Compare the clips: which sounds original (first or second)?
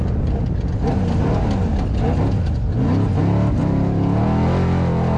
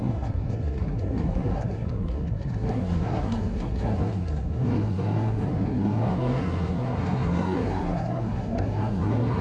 first